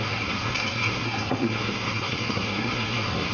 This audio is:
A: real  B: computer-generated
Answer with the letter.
B